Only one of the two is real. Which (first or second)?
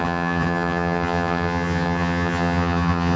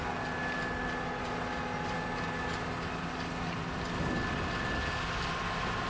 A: second